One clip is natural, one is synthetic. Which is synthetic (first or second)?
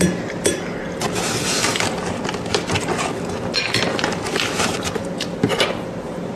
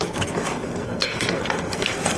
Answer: second